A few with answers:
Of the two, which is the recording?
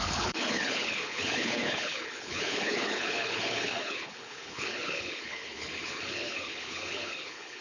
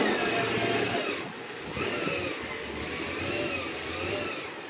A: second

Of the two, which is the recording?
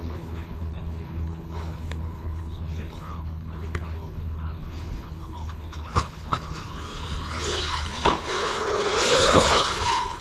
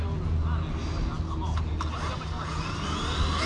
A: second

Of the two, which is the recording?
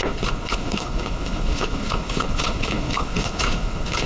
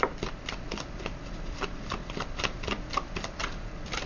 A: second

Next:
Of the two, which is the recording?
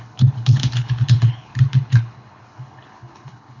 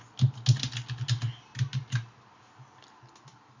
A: second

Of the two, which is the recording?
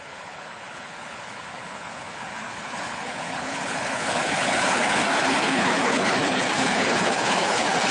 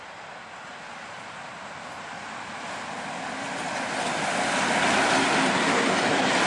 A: second